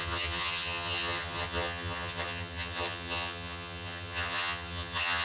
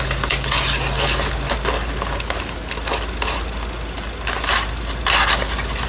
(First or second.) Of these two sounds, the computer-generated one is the first